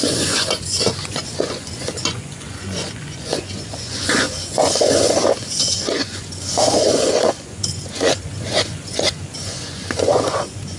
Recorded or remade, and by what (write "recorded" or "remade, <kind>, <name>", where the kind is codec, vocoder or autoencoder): remade, vocoder, Vocos